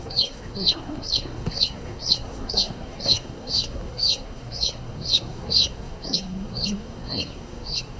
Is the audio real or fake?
fake